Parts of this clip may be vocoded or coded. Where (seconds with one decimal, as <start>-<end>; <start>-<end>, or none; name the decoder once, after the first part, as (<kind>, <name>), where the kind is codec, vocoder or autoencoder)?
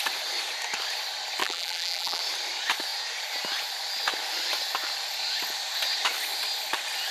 1.4-2.2 (vocoder, BigVGAN v2)